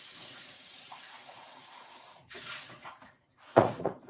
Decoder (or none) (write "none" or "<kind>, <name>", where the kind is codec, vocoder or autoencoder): vocoder, Vocos